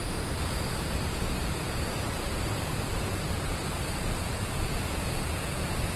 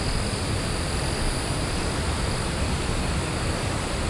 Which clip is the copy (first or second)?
first